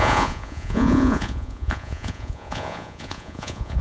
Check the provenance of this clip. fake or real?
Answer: fake